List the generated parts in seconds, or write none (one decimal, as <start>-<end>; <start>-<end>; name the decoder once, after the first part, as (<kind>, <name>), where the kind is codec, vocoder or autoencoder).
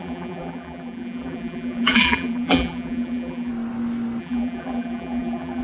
0.0-3.5 (vocoder, BigVGAN v2); 4.2-5.6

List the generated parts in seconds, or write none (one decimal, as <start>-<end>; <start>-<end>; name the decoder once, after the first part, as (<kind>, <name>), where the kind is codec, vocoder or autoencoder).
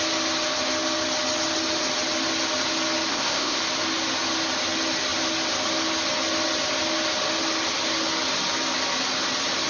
3.1-3.6 (codec, ZipCodec)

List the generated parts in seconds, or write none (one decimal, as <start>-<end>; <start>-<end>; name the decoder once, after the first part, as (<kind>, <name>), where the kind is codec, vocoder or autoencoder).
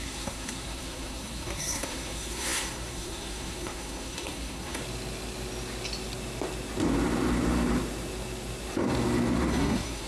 0.0-4.8 (codec, SNAC); 9.5-10.1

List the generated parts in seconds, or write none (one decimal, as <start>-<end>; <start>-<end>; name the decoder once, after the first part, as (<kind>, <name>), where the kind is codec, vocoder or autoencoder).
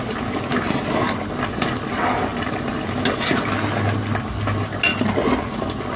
none